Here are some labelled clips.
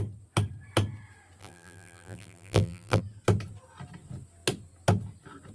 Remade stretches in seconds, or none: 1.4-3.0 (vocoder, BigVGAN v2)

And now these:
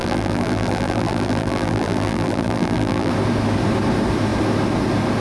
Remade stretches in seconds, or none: 0.0-3.1 (vocoder, BigVGAN v2)